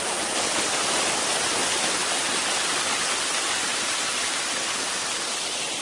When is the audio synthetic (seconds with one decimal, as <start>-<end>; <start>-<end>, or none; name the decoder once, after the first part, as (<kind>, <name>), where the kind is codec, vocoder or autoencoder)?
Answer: none